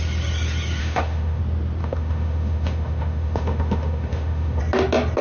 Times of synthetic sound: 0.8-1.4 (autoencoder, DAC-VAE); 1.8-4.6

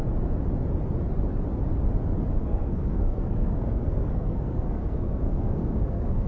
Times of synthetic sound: 2.4-6.3 (codec, SNAC)

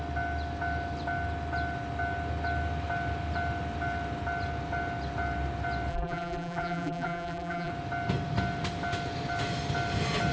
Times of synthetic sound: 5.9-7.7 (vocoder, BigVGAN v2)

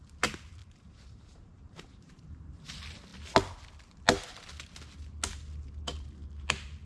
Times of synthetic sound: 0.6-2.6 (vocoder, BigVGAN v2)

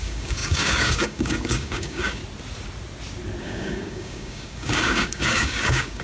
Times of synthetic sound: 0.0-2.2 (codec, DAC); 3.4-6.0

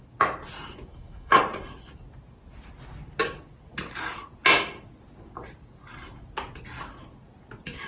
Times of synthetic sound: 0.9-1.4 (autoencoder, DAC-VAE)

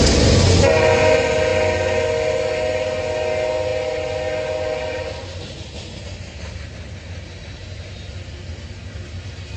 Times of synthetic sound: none